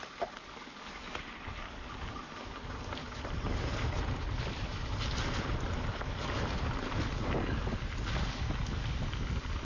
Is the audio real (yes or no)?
yes